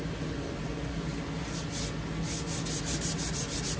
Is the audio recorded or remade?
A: recorded